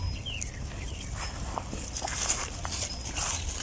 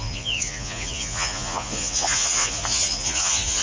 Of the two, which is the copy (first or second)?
second